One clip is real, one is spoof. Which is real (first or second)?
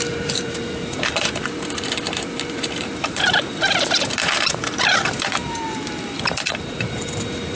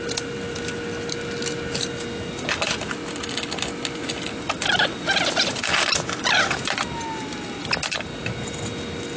second